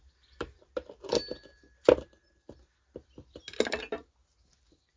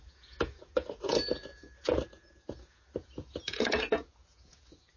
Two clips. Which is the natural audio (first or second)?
first